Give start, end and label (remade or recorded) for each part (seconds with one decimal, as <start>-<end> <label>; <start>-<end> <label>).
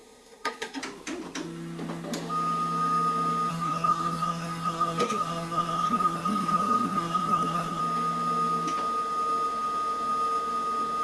0.0-0.8 remade; 0.8-3.5 recorded; 3.5-7.8 remade; 7.8-11.0 recorded